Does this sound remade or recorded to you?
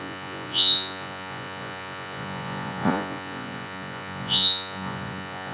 remade